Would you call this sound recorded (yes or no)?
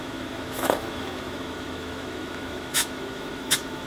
no